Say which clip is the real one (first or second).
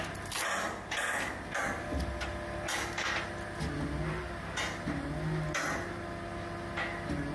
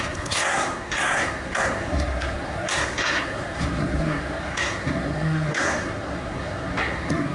first